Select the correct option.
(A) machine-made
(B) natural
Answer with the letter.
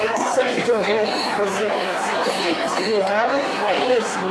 A